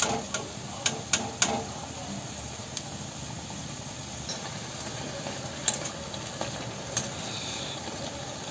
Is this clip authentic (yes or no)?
yes